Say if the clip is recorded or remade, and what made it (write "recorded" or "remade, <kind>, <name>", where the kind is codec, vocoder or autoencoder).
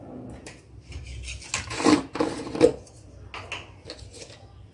recorded